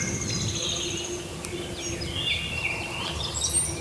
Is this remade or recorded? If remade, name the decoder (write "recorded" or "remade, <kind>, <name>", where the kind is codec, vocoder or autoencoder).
recorded